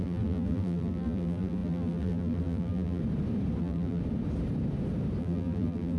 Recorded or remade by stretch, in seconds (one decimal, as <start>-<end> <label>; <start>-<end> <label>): 0.0-3.0 remade; 3.0-3.6 recorded; 3.6-4.0 remade; 4.0-5.2 recorded; 5.2-6.0 remade